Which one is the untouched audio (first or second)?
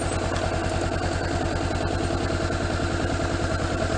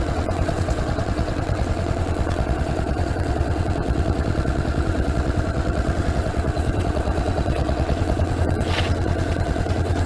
first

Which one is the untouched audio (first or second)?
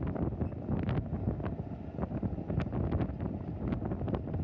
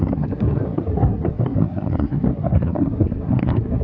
first